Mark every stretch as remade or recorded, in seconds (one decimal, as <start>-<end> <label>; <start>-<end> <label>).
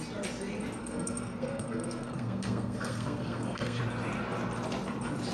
0.0-0.8 recorded; 0.8-3.8 remade; 3.8-5.3 recorded